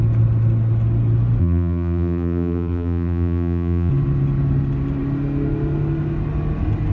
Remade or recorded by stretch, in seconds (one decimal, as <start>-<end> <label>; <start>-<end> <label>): 0.0-1.4 recorded; 1.4-3.9 remade; 3.9-6.9 recorded